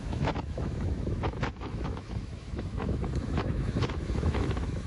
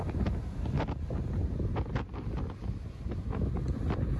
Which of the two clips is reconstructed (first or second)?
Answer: first